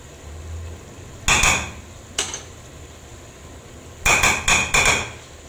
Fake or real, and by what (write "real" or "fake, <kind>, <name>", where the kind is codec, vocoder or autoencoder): real